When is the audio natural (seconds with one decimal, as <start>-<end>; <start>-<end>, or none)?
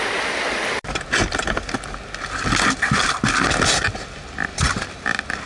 0.0-4.5; 5.0-5.5